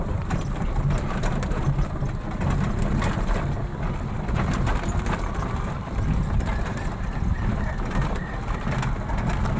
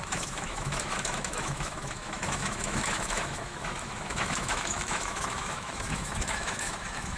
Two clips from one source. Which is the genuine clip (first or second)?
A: first